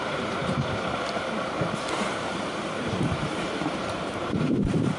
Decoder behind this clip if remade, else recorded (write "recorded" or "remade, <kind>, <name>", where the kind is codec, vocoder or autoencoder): remade, vocoder, BigVGAN v2